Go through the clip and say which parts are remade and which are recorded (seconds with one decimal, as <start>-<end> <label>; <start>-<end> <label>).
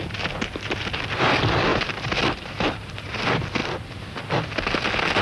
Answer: 0.0-1.7 recorded; 1.7-3.2 remade; 3.2-5.2 recorded